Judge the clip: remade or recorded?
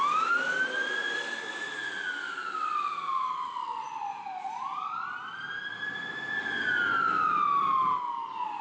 recorded